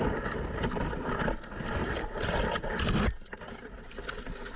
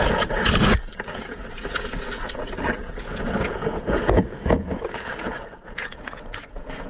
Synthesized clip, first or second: second